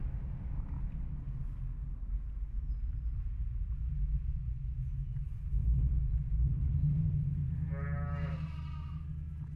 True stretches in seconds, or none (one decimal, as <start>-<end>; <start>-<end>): 0.0-3.0; 7.4-9.6